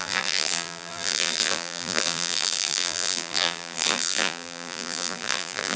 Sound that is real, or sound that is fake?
fake